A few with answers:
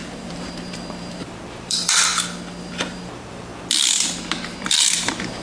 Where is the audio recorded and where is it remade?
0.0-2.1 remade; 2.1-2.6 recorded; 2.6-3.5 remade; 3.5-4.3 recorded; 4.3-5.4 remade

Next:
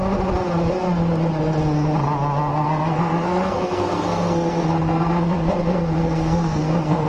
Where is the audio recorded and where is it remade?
0.0-2.5 recorded; 2.5-7.1 remade

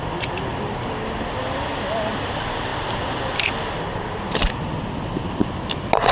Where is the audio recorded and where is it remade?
0.0-6.1 recorded

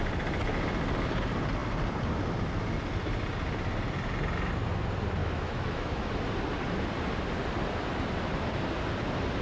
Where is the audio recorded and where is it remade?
0.0-5.2 recorded; 5.2-6.1 remade; 6.1-9.4 recorded

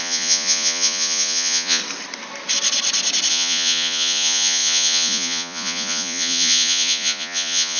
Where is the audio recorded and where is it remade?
0.0-1.8 remade; 1.8-3.3 recorded; 3.3-7.8 remade

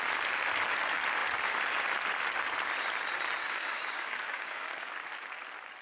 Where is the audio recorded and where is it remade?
0.0-3.4 recorded; 3.4-4.9 remade; 4.9-5.8 recorded

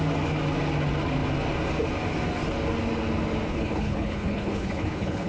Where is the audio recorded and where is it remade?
0.0-3.5 recorded; 3.5-5.3 remade

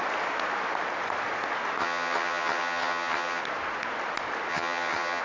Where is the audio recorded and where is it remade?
0.0-1.8 recorded; 1.8-3.4 remade; 3.4-4.5 recorded; 4.5-5.2 remade